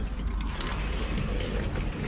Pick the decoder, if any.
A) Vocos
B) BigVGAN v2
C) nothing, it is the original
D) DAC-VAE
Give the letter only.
C